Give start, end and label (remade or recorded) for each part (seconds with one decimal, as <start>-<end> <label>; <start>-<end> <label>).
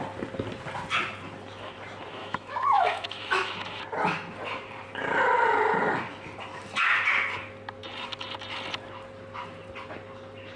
0.0-2.2 recorded; 2.2-3.8 remade; 3.8-10.6 recorded